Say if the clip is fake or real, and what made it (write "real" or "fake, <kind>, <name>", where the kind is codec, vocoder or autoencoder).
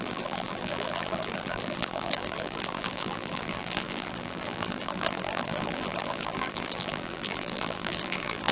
fake, vocoder, BigVGAN v2